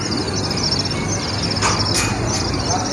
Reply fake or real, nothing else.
real